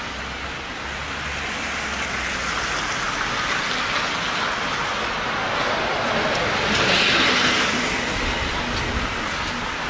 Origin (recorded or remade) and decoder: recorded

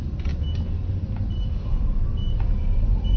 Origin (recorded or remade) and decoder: recorded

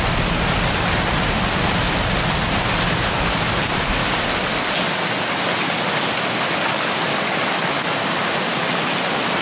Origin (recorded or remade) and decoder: recorded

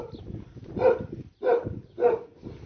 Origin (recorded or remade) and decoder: recorded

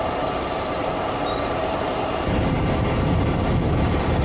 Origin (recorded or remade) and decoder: remade, vocoder, BigVGAN v2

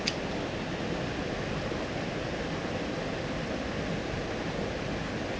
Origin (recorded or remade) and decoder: recorded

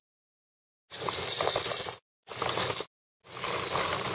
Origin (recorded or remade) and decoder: recorded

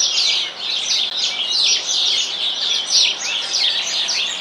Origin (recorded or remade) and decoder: recorded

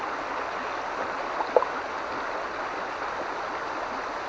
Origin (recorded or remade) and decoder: recorded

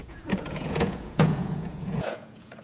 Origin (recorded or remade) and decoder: remade, vocoder, Vocos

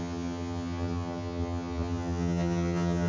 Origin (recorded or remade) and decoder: remade, vocoder, HiFi-GAN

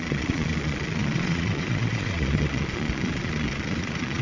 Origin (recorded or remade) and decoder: remade, vocoder, Vocos